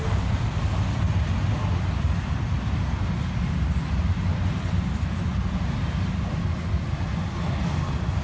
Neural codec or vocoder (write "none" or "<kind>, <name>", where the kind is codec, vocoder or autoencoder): none